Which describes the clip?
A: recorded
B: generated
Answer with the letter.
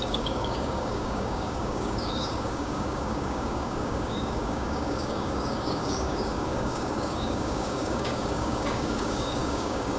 B